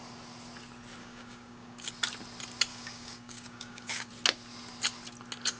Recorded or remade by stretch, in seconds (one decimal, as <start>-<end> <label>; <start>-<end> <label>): 0.0-1.0 recorded; 1.0-1.9 remade; 1.9-2.7 recorded; 2.7-4.1 remade; 4.1-5.6 recorded